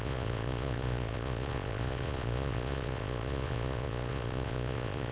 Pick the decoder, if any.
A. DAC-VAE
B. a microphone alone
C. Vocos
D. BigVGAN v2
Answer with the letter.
C